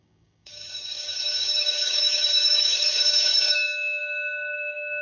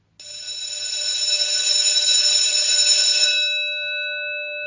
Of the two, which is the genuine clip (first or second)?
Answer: second